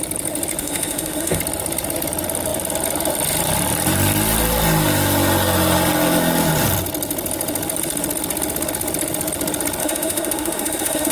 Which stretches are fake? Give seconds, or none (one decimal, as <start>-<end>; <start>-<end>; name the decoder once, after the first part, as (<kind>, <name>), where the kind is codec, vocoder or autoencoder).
0.6-1.4 (autoencoder, DAC-VAE); 9.8-11.1